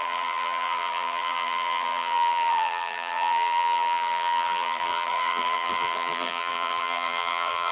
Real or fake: fake